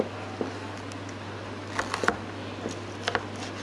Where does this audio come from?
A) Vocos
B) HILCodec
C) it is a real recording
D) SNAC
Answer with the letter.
C